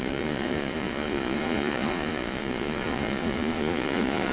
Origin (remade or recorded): remade